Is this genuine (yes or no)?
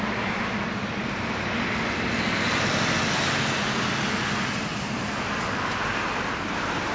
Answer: yes